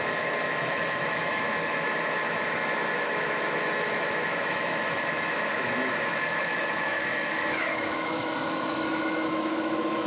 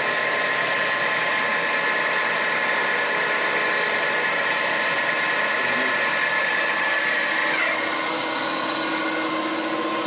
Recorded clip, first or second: second